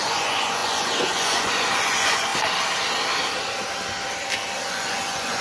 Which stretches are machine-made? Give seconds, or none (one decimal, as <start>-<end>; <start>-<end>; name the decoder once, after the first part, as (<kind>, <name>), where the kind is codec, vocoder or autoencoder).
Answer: 0.0-2.3 (vocoder, Vocos); 4.7-5.4